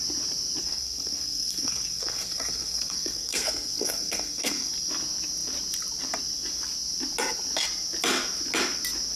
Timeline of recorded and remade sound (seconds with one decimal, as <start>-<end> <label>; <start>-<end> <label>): 0.0-0.6 recorded; 0.6-4.7 remade; 4.7-9.2 recorded